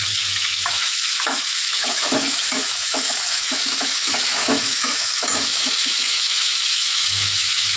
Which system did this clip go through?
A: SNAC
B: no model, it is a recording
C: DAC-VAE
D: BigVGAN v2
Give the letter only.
C